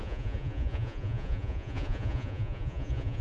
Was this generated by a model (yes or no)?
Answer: yes